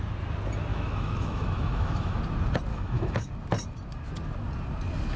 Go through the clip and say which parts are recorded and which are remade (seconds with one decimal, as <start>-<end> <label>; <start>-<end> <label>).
0.0-0.7 recorded; 0.7-2.2 remade; 2.2-2.7 recorded; 2.7-3.3 remade; 3.3-5.2 recorded

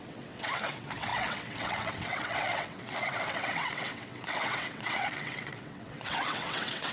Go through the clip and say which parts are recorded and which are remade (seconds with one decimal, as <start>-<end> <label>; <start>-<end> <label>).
0.0-6.9 remade

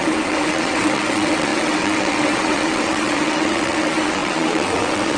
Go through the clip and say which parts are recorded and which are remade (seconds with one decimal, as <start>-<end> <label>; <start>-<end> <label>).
0.0-5.2 remade

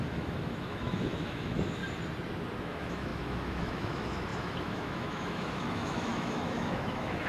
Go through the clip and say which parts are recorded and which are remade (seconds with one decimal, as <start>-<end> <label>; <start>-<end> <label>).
0.0-1.8 remade; 1.8-2.6 recorded; 2.6-7.3 remade

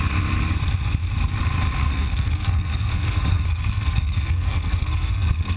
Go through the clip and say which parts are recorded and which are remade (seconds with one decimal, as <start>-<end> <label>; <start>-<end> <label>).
0.0-1.8 recorded; 1.8-5.6 remade

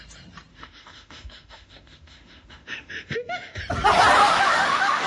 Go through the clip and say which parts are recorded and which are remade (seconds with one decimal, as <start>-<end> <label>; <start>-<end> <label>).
0.0-0.5 recorded; 0.5-3.6 remade; 3.6-4.2 recorded; 4.2-5.1 remade

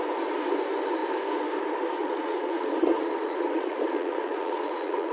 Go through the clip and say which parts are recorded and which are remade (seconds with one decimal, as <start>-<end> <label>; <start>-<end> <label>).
0.0-2.0 recorded; 2.0-5.1 remade

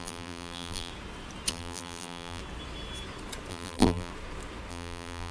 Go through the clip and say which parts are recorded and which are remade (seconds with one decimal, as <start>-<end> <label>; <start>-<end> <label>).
0.0-0.9 remade; 0.9-1.5 recorded; 1.5-2.4 remade; 2.4-3.5 recorded; 3.5-4.1 remade; 4.1-4.7 recorded; 4.7-5.3 remade